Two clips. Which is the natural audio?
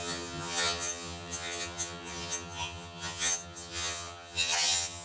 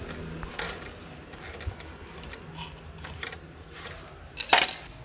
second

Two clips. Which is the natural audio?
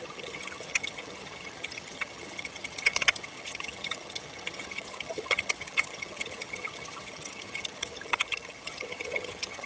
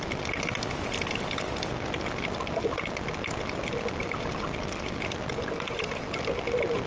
second